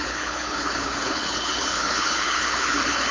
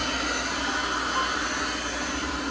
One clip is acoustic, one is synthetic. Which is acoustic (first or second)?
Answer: second